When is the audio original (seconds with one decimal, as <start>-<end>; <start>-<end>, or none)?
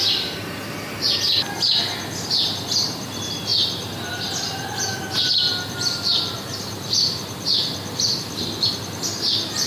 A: 0.0-9.7